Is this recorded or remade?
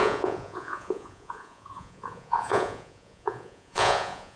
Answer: remade